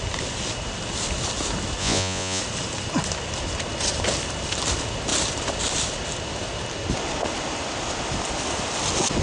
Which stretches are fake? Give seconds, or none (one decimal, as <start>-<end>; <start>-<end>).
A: 1.8-2.4